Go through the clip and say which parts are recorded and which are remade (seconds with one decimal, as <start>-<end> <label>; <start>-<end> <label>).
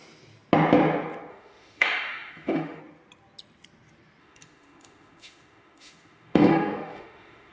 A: 0.0-1.3 recorded; 1.3-2.8 remade; 2.8-4.2 recorded; 4.2-7.5 remade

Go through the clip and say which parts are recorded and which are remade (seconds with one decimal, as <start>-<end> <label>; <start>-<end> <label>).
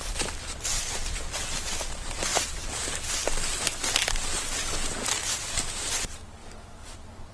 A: 0.0-2.3 recorded; 2.3-2.9 remade; 2.9-7.3 recorded